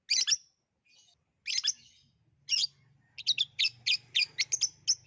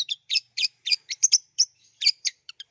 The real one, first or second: first